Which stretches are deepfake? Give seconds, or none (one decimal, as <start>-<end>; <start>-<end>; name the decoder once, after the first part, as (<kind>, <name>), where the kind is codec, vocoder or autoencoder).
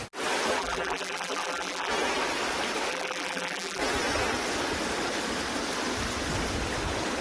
0.6-1.9 (vocoder, BigVGAN v2); 2.9-3.8